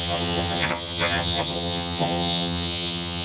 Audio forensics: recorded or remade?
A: remade